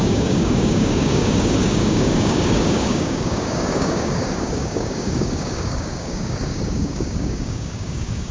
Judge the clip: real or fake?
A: fake